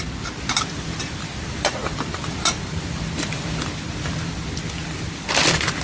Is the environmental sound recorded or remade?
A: recorded